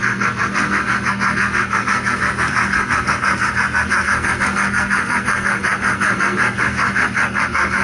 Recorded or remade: remade